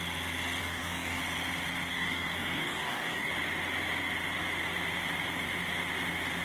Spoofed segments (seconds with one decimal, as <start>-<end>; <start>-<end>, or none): 0.6-1.2; 1.9-3.3